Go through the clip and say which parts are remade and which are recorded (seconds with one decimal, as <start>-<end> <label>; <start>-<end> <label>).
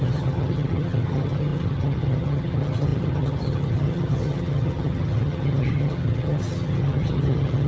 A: 0.0-7.7 remade